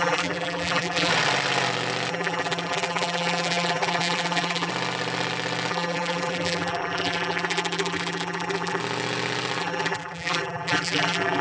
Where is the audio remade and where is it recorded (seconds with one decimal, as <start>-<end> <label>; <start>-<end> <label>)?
0.0-1.1 remade; 1.1-2.1 recorded; 2.1-4.7 remade; 4.7-5.7 recorded; 5.7-8.8 remade; 8.8-9.6 recorded; 9.6-11.4 remade